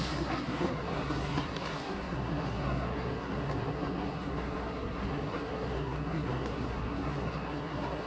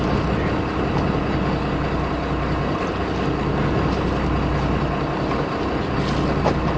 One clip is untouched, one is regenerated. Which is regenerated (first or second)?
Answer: first